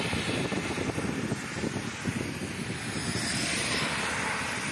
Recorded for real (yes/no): yes